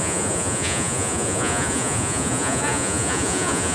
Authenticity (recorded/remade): remade